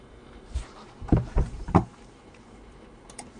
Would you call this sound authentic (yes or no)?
no